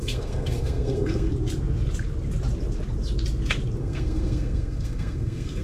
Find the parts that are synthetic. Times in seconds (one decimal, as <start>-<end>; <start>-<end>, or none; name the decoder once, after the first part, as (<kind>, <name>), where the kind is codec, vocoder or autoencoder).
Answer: 0.0-1.3 (codec, SNAC); 3.8-5.6